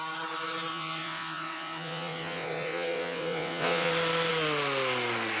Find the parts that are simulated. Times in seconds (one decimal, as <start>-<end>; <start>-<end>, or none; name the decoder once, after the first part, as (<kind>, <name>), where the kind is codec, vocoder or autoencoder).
0.7-3.9 (vocoder, WaveNeXt)